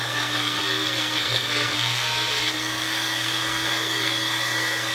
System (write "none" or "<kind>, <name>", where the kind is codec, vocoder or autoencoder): codec, SNAC